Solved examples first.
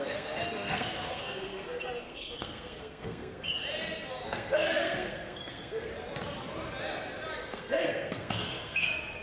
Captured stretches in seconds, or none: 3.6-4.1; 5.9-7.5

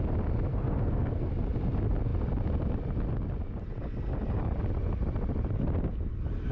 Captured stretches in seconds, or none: 0.0-0.5; 1.3-6.5

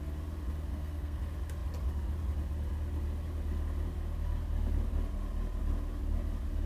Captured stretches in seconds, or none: 0.0-0.7; 1.2-6.7

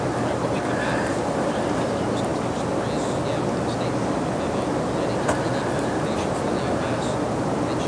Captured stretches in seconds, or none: 0.0-7.9

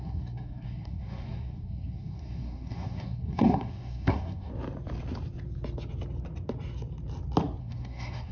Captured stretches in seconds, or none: 4.5-7.6